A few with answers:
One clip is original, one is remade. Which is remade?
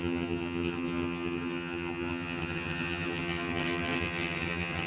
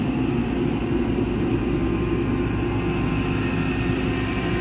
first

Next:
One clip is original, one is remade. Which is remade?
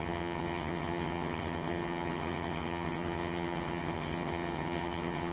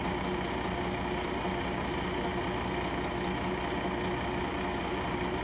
first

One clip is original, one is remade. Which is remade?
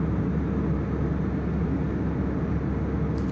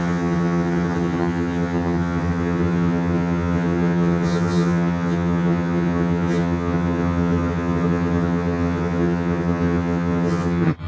second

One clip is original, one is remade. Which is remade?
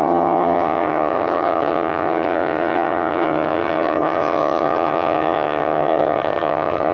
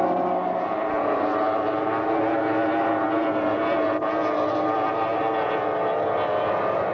first